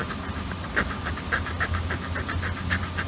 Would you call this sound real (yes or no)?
yes